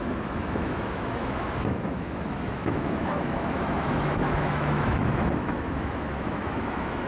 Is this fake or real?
fake